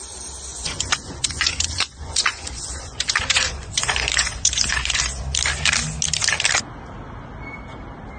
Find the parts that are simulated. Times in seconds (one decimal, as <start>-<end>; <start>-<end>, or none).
0.5-5.0